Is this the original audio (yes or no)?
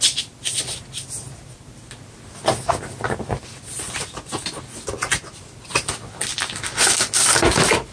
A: yes